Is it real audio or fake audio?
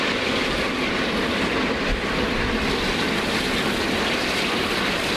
real